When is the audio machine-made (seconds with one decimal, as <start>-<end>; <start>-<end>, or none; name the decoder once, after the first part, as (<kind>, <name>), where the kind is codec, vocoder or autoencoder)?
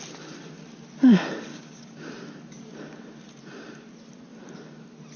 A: 1.5-2.1 (codec, DAC)